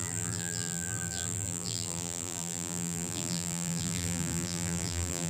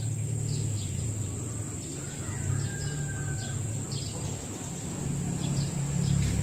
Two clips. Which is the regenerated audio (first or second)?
first